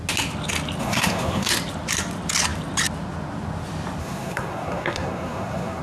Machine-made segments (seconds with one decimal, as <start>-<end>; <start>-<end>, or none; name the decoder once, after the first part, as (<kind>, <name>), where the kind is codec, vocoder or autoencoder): 0.8-1.5 (codec, SNAC); 4.0-5.8